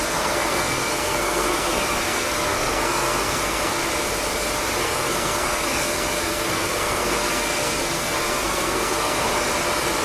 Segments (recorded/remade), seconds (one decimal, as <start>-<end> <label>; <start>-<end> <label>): 0.0-3.8 remade; 3.8-4.8 recorded; 4.8-9.3 remade; 9.3-10.0 recorded